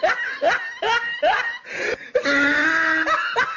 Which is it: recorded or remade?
recorded